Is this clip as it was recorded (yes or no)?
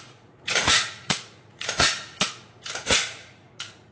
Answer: no